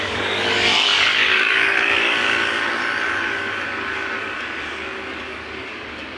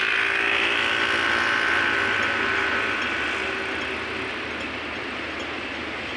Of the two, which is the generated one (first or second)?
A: first